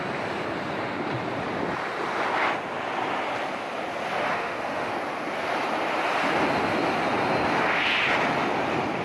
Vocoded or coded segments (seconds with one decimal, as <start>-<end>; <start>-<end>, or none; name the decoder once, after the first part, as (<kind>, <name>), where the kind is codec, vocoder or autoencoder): 4.2-4.9 (autoencoder, DAC-VAE)